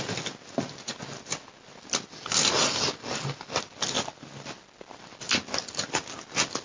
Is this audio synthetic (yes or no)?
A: no